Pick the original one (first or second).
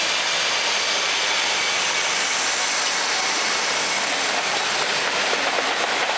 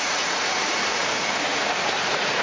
first